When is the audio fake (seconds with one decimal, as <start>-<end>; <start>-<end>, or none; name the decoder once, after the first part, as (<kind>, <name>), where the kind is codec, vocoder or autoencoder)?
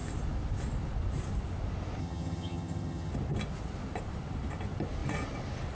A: 2.0-3.1 (vocoder, HiFi-GAN)